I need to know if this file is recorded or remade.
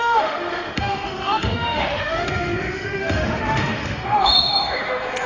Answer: remade